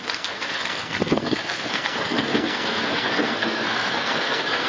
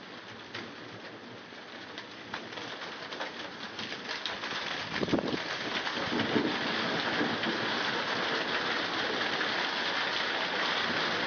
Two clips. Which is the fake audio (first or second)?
first